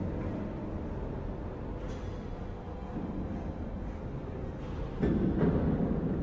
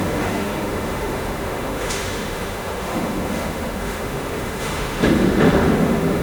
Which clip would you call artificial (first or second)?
second